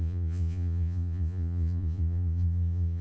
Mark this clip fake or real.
fake